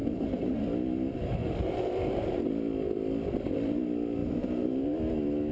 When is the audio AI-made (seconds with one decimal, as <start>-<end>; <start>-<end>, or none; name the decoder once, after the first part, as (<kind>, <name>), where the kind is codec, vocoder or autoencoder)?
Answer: 0.0-0.6 (vocoder, BigVGAN v2); 1.4-2.5; 4.2-4.8